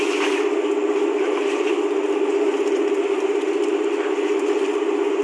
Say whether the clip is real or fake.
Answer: fake